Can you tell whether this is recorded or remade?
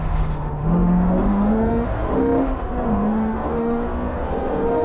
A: remade